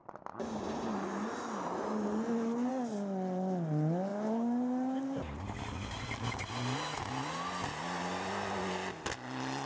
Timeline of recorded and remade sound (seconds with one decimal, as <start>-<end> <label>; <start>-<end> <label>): 0.0-9.7 recorded